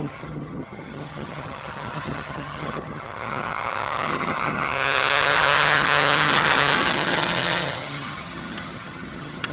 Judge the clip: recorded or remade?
remade